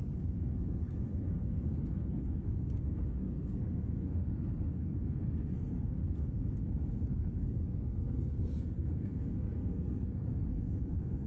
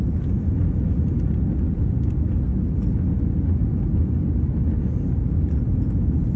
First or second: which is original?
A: second